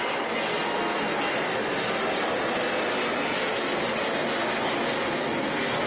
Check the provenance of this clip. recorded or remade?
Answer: recorded